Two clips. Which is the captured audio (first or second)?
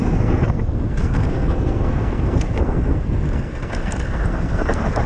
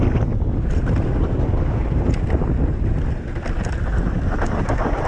second